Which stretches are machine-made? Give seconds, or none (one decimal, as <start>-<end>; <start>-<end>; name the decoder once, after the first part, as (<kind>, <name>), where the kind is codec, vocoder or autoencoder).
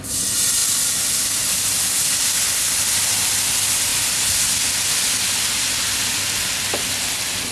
none